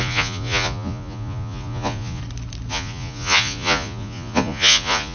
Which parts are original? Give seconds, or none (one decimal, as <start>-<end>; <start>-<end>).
2.2-2.7